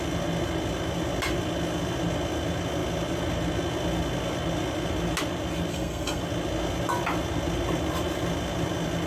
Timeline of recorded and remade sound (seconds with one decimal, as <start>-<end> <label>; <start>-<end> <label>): 0.0-5.7 recorded; 5.7-6.2 remade; 6.2-9.1 recorded